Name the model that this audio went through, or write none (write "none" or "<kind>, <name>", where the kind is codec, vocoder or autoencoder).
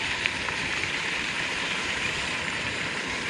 vocoder, BigVGAN v2